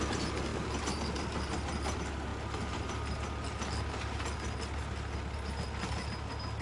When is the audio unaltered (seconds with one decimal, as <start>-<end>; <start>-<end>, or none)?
0.0-6.6